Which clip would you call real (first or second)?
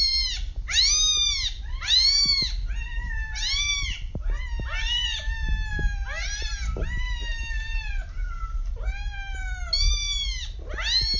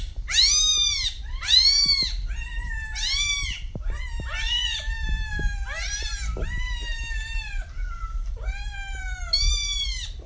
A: first